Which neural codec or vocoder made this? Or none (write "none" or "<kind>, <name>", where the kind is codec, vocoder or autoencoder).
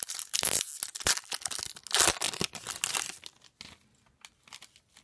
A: none